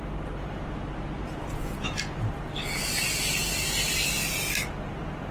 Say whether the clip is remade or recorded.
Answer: recorded